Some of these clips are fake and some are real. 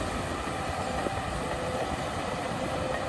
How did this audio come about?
fake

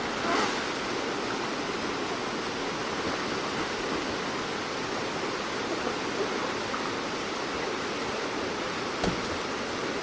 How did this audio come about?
real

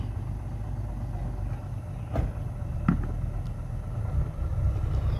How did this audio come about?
real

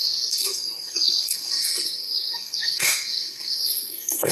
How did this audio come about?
fake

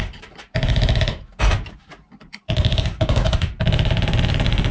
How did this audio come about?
fake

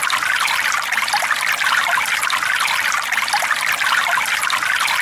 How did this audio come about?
real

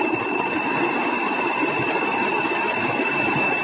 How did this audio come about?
real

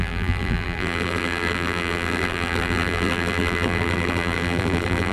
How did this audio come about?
fake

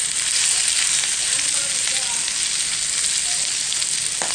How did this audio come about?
real